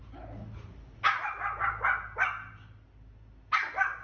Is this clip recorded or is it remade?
recorded